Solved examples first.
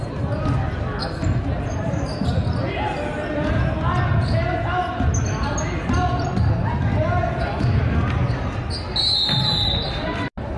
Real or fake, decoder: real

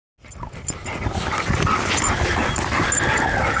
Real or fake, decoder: real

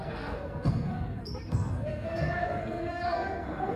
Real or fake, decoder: fake, codec, SNAC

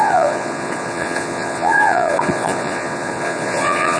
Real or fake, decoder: fake, vocoder, Vocos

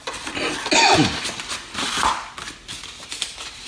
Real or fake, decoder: real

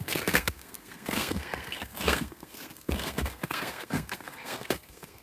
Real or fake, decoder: fake, codec, SNAC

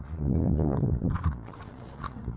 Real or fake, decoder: fake, vocoder, Vocos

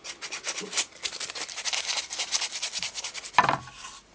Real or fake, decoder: real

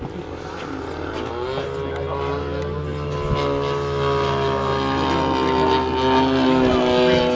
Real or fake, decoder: real